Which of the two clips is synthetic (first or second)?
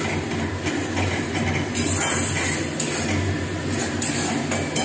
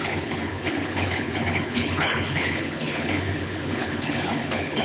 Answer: second